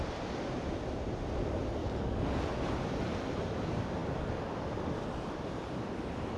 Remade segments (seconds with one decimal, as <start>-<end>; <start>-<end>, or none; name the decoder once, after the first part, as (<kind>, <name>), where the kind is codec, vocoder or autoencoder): 1.8-2.4 (codec, DAC)